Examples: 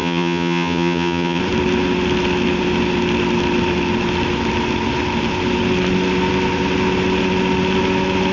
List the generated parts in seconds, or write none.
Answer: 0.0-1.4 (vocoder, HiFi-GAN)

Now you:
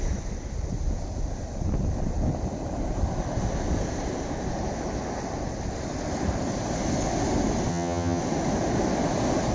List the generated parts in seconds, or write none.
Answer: 7.7-8.2 (vocoder, HiFi-GAN)

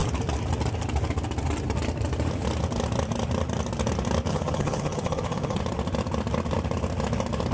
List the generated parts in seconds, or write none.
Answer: 4.3-5.6 (vocoder, HiFi-GAN)

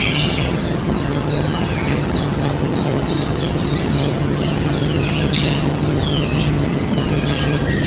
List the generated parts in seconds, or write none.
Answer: 0.0-7.9 (vocoder, HiFi-GAN)

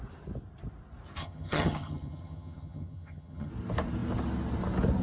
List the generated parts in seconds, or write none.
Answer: 1.2-3.5 (vocoder, HiFi-GAN)

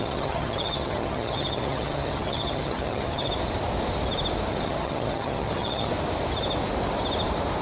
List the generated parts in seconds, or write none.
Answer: 0.0-3.3 (vocoder, HiFi-GAN); 4.5-5.9

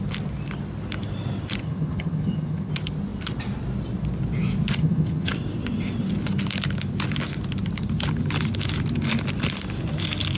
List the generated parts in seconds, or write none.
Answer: 1.6-2.7 (vocoder, HiFi-GAN); 4.8-5.3

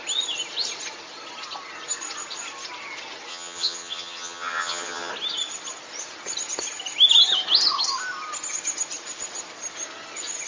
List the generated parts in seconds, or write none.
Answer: 3.3-5.1 (vocoder, HiFi-GAN)